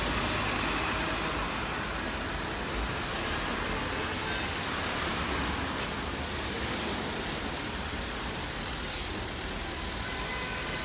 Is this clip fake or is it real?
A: real